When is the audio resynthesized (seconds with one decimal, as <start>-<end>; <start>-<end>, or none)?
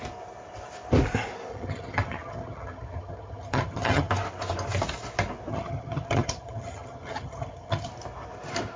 1.5-4.1; 5.5-7.9